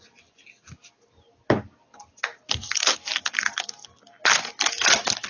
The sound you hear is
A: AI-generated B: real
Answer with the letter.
B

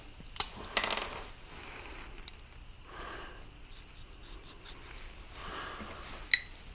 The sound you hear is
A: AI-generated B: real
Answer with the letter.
B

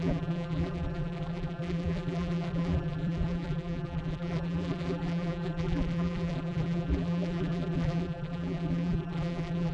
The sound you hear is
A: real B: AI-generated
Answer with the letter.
B